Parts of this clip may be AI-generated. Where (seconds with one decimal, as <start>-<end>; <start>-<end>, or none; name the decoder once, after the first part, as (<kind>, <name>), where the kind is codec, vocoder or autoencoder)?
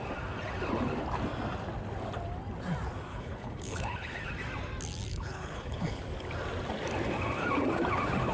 3.1-4.3 (codec, HILCodec); 5.1-6.0